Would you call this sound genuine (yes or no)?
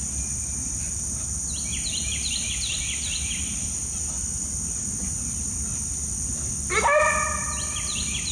yes